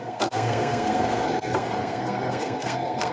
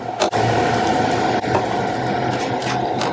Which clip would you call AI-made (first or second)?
first